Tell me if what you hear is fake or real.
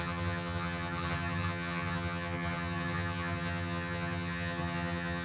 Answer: fake